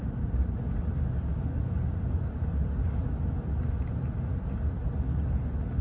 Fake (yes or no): no